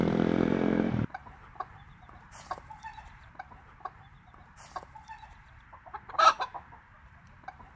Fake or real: fake